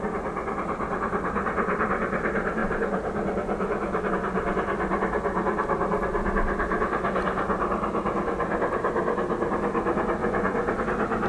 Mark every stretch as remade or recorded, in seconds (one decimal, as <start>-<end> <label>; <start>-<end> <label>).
0.0-10.2 recorded; 10.2-10.8 remade; 10.8-11.3 recorded